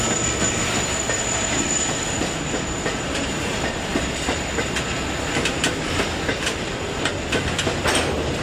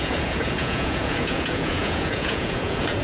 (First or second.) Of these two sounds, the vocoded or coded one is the second